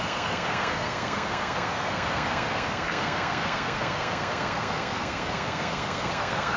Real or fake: fake